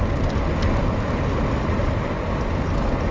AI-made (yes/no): no